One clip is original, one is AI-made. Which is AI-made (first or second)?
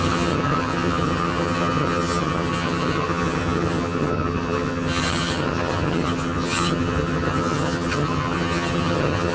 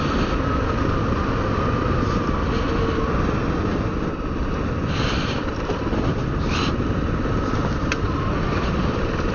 first